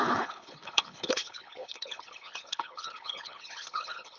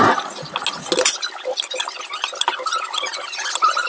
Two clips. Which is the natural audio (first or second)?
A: second